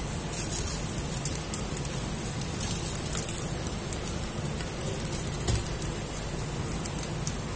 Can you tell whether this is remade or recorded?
recorded